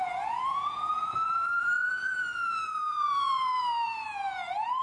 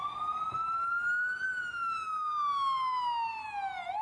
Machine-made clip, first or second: first